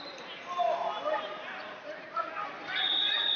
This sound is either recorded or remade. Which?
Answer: recorded